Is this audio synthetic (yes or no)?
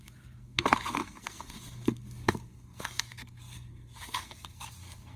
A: yes